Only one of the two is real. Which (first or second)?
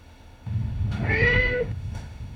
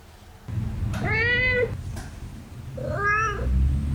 second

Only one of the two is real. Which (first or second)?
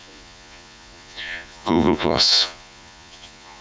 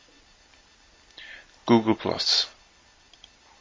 second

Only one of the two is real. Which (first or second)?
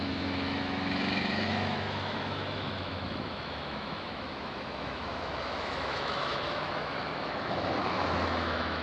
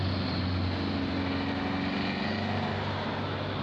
second